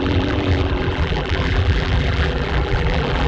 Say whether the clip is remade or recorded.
remade